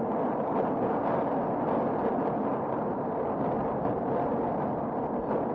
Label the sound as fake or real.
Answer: real